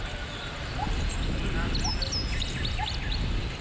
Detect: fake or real real